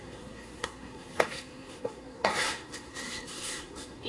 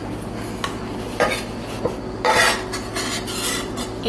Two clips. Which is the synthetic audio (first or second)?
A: first